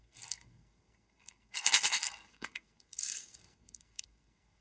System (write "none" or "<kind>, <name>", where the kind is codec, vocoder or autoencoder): codec, SNAC